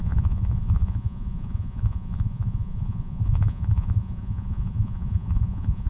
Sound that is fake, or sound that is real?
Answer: fake